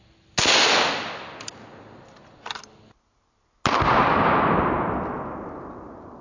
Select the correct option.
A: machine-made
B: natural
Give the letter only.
B